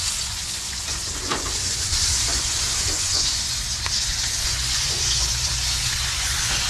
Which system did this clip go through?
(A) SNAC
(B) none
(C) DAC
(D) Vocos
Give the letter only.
D